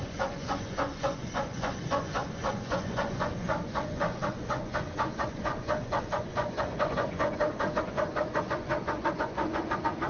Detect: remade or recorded remade